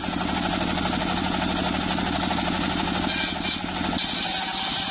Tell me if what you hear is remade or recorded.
recorded